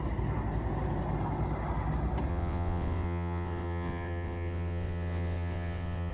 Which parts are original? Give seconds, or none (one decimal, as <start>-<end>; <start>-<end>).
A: 0.0-2.3